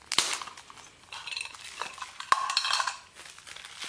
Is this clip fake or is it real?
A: real